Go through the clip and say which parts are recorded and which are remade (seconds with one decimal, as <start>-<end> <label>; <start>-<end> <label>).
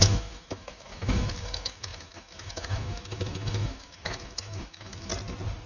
0.0-5.1 remade; 5.1-5.7 recorded